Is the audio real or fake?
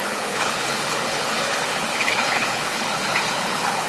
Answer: fake